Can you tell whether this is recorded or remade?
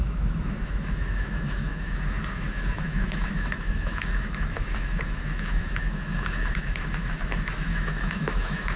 remade